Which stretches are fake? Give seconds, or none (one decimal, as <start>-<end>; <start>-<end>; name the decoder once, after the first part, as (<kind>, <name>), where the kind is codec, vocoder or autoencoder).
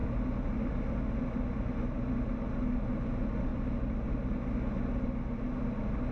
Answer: 3.5-4.1 (vocoder, BigVGAN v2)